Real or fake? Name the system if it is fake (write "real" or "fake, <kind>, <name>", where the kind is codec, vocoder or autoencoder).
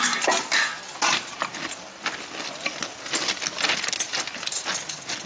real